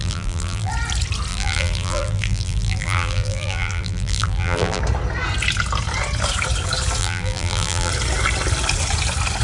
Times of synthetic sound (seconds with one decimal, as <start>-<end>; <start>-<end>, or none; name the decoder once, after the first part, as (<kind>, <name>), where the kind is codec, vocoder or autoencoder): 0.0-0.7 (vocoder, BigVGAN v2); 1.3-4.8; 7.0-7.9